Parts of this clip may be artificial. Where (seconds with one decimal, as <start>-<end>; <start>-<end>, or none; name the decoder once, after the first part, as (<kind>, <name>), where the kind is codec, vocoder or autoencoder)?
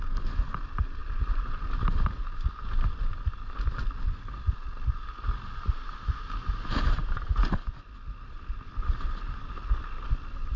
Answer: none